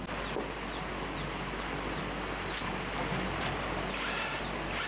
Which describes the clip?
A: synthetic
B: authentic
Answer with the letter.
B